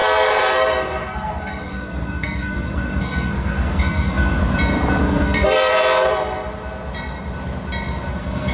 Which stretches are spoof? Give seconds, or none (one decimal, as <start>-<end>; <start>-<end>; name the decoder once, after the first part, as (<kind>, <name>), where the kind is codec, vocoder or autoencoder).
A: 0.0-4.4 (codec, SNAC); 5.0-5.7; 8.1-8.5